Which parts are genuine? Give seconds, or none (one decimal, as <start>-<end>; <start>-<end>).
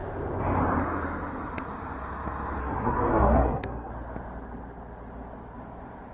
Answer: 0.0-2.6; 3.9-6.1